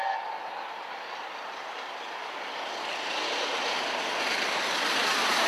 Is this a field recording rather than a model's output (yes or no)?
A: yes